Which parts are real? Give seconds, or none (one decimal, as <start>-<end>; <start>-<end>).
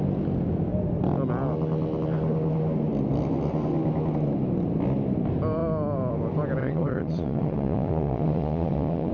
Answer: 0.0-6.6